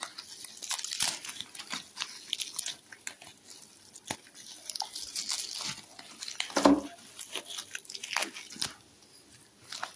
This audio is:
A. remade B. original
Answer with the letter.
B